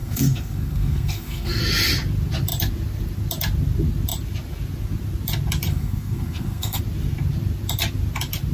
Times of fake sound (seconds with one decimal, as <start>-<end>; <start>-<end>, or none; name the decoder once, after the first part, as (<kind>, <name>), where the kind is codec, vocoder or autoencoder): 0.0-1.6 (codec, SNAC); 5.7-6.8